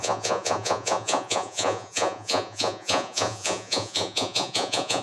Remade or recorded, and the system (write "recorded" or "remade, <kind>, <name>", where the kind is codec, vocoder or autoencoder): remade, vocoder, Vocos